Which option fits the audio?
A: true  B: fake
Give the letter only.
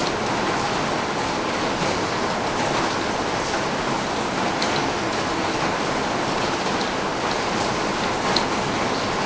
A